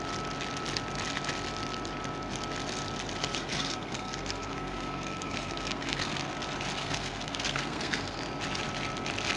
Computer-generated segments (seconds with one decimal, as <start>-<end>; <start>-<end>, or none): 3.3-6.3; 6.8-8.2